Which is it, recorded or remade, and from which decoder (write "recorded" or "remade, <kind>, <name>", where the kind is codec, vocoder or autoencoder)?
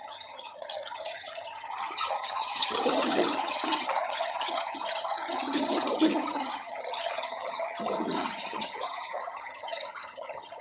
remade, vocoder, HiFi-GAN